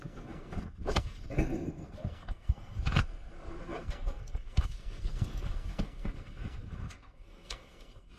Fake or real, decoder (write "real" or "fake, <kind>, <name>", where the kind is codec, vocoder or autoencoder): fake, codec, SNAC